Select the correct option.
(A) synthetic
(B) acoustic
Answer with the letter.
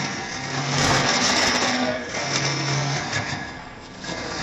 A